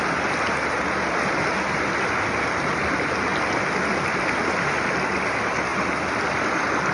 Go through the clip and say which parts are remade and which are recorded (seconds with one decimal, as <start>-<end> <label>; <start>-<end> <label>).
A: 0.0-6.9 recorded